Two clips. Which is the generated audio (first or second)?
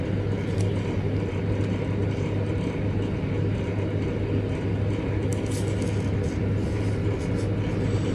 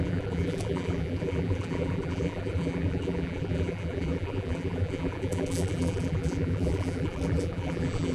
second